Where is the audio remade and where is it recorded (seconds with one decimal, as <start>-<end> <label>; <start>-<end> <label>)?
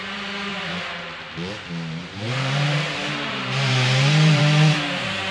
0.0-2.0 recorded; 2.0-4.4 remade; 4.4-5.3 recorded